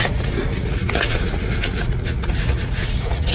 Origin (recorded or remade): remade